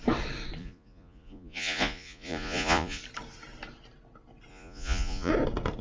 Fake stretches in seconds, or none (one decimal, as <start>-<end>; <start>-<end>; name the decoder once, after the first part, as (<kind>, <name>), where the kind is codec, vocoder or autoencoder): 0.6-3.0 (vocoder, Vocos); 4.5-5.3